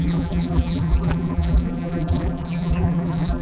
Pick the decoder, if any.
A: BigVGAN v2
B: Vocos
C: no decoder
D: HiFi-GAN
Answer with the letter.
A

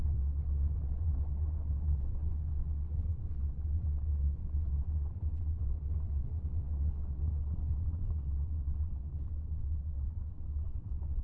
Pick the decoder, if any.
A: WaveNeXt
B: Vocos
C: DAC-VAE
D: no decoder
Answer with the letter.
A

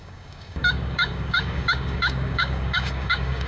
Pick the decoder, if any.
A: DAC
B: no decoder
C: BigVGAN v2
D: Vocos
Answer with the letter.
A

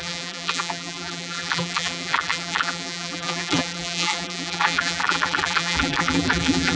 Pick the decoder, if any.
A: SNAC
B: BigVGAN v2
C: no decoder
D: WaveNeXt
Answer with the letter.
B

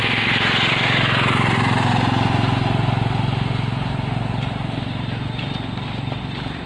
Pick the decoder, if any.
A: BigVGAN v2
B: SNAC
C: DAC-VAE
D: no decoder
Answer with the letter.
D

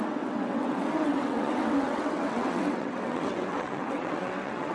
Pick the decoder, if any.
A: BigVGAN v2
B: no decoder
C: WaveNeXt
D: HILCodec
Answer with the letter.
C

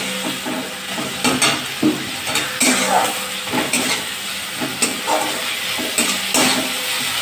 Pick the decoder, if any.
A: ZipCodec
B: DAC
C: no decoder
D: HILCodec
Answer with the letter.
C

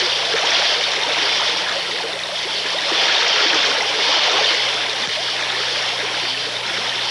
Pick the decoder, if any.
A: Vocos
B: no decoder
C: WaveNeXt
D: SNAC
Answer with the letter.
B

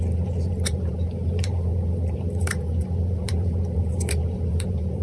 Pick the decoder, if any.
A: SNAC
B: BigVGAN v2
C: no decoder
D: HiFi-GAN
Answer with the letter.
B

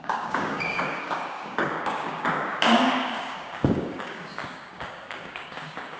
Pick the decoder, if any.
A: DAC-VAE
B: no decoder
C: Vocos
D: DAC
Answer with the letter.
D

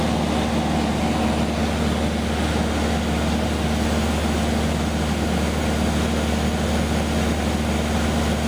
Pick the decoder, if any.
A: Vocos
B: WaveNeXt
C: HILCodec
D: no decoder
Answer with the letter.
D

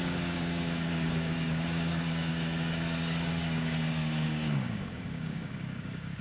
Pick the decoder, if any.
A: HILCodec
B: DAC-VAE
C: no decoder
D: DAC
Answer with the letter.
D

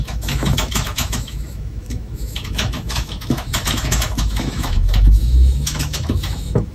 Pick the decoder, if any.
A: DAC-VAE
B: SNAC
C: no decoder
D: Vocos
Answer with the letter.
A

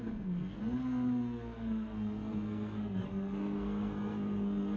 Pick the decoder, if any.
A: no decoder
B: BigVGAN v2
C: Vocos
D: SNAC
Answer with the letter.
D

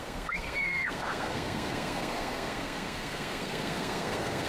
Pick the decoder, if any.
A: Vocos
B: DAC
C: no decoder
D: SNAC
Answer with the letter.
D